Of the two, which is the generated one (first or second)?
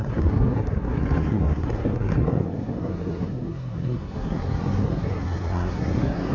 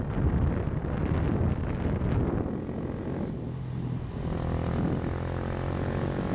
first